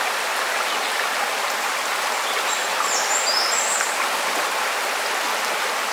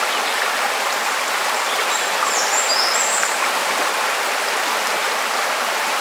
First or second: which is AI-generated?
second